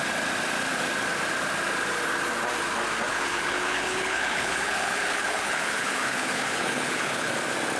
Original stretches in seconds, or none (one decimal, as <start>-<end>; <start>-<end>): 0.0-3.1; 7.3-7.8